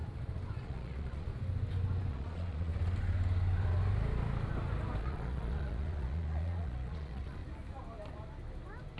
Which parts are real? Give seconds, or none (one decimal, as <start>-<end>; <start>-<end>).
0.0-0.6; 1.3-2.1; 2.7-5.0; 7.4-9.0